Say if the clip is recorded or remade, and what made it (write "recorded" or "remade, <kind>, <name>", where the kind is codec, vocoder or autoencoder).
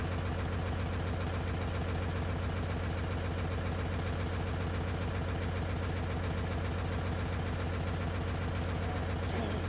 recorded